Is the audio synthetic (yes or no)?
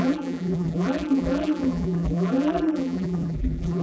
yes